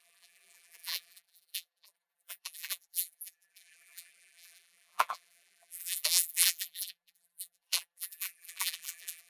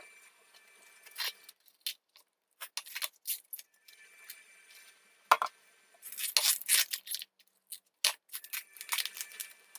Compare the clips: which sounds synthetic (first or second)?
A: first